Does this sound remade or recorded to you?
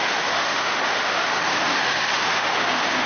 remade